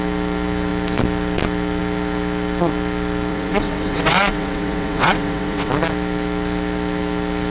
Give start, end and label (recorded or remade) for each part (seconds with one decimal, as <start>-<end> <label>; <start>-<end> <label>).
0.0-3.3 recorded; 3.3-5.7 remade; 5.7-7.5 recorded